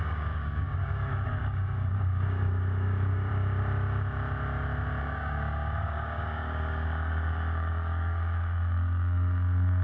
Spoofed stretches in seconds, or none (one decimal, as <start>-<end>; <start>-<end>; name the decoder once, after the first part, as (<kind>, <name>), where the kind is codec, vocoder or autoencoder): 0.0-3.3 (codec, DAC); 5.0-9.8